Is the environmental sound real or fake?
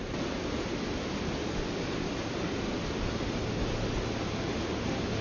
real